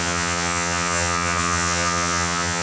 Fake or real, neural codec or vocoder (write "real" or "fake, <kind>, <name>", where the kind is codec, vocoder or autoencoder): fake, vocoder, HiFi-GAN